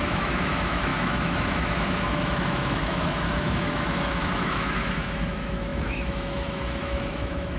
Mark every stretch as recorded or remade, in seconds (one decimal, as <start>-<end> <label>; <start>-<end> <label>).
0.0-7.6 remade